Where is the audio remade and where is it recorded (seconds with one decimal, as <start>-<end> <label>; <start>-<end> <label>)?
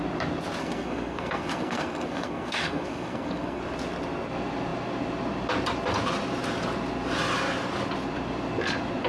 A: 0.0-0.6 recorded; 0.6-3.6 remade; 3.6-9.1 recorded